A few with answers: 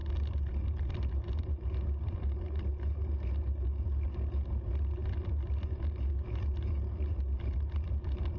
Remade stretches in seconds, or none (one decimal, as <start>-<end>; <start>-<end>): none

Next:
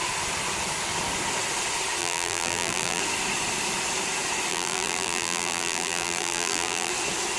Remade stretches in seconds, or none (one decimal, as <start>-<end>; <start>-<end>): 2.0-3.0; 4.5-6.9

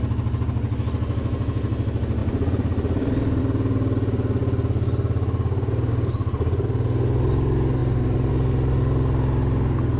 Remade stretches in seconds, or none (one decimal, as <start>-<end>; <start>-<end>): 2.2-3.4; 7.8-8.3

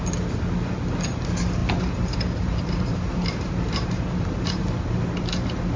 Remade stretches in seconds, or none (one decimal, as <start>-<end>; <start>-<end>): 1.6-4.7